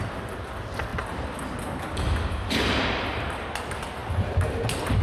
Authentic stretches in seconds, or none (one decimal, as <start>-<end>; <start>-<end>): 0.0-4.0; 4.6-5.0